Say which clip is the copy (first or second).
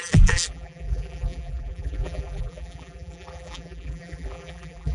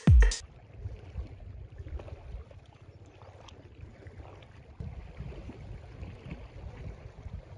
first